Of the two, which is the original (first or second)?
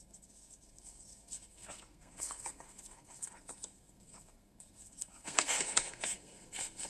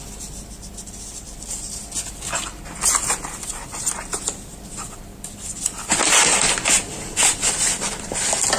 second